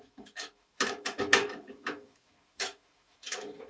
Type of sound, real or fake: fake